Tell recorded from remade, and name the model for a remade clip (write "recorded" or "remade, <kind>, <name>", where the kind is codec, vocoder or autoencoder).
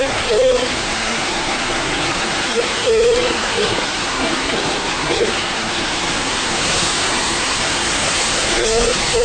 remade, codec, SNAC